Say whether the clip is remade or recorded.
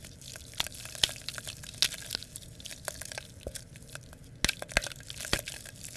recorded